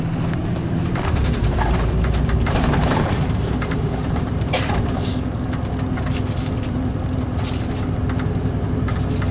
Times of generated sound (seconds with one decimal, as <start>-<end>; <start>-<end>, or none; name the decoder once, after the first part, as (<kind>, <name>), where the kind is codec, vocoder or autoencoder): 0.4-5.1 (vocoder, BigVGAN v2)